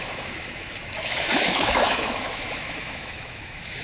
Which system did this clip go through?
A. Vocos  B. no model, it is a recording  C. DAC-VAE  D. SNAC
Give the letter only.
C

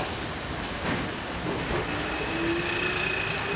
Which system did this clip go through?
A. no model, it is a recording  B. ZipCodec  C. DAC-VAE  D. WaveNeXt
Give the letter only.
A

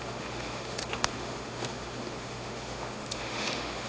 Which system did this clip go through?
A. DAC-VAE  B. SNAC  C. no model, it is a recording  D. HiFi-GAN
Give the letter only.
A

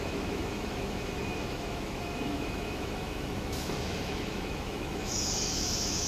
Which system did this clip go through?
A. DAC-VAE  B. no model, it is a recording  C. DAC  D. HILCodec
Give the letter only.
A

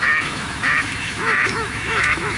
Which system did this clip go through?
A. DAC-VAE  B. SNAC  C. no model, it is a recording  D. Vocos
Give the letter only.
A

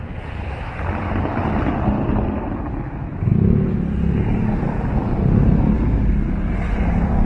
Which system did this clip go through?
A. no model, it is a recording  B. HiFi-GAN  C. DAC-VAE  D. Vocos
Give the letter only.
A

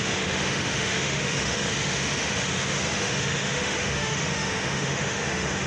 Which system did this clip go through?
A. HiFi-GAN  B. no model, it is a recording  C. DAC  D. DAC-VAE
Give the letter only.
D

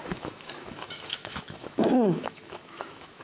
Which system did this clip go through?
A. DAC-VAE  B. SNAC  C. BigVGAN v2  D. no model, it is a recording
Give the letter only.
A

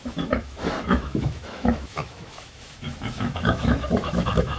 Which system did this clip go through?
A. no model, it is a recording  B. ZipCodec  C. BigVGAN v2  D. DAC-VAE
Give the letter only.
D